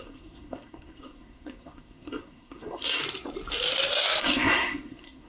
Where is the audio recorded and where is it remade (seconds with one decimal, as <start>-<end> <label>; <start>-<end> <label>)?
0.0-3.0 remade; 3.0-4.2 recorded; 4.2-5.3 remade